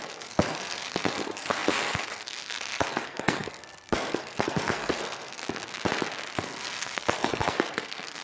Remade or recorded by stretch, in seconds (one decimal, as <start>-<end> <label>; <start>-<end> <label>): 0.0-5.4 remade; 5.4-6.3 recorded; 6.3-8.2 remade